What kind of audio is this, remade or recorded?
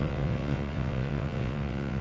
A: remade